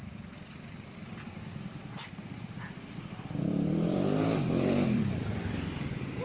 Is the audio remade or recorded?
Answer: remade